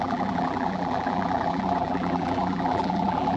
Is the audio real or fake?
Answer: fake